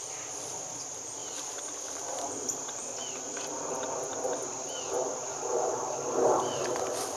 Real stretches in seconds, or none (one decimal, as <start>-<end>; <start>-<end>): 0.0-1.2; 3.1-7.2

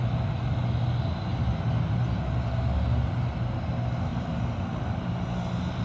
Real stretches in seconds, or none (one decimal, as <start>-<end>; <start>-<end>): 0.0-5.8